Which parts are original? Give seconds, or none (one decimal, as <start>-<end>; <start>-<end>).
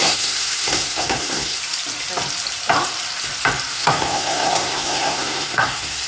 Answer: 1.6-3.7